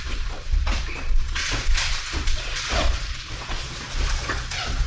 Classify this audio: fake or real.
fake